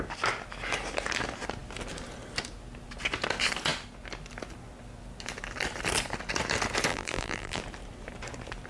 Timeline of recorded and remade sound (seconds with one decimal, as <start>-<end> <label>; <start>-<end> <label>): 0.0-6.9 recorded; 6.9-7.6 remade; 7.6-8.7 recorded